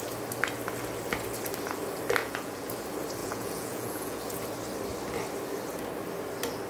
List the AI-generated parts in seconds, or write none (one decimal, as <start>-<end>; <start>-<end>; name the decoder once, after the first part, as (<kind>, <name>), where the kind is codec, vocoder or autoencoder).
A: 2.2-2.7 (vocoder, Vocos); 3.2-4.2